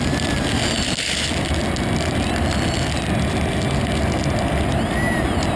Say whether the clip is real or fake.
real